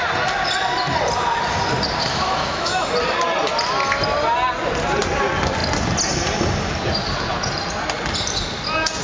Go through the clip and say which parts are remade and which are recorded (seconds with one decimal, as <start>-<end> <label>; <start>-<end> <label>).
0.0-2.1 recorded; 2.1-2.9 remade; 2.9-9.0 recorded